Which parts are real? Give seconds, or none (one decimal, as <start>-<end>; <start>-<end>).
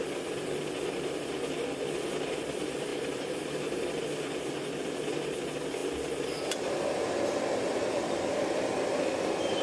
0.0-2.9; 3.9-9.6